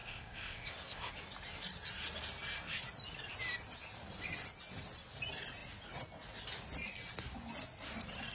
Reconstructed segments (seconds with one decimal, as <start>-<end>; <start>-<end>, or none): 0.0-1.1